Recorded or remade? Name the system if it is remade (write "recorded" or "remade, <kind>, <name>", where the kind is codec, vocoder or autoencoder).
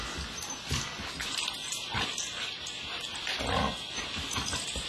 recorded